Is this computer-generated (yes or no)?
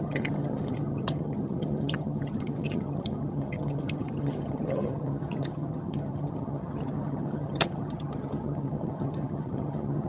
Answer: yes